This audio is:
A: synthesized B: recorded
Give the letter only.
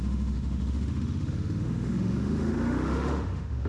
A